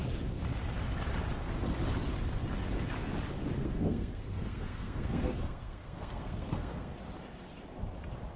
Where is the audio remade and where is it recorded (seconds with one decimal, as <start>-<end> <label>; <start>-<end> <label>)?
0.0-3.6 recorded; 3.6-7.0 remade; 7.0-8.4 recorded